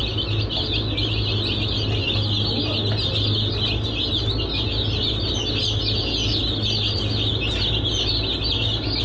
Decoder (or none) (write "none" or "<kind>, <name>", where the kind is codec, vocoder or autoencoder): none